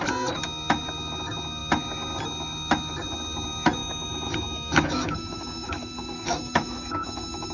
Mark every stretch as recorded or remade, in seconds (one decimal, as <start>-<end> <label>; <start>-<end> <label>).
0.0-3.8 recorded; 3.8-7.5 remade